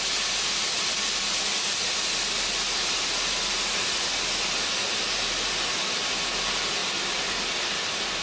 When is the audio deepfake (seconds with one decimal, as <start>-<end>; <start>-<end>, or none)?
6.8-8.2